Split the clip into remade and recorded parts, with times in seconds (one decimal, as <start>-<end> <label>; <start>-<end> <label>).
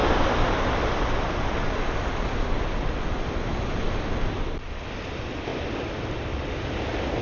0.0-7.2 recorded